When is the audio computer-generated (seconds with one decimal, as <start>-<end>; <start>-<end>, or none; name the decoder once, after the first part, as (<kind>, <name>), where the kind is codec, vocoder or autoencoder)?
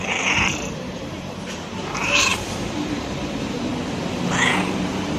0.5-3.7 (vocoder, BigVGAN v2); 4.6-5.2